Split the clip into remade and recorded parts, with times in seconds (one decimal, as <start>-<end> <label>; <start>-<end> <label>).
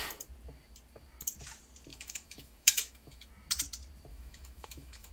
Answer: 0.0-1.9 recorded; 1.9-3.3 remade; 3.3-4.1 recorded; 4.1-5.1 remade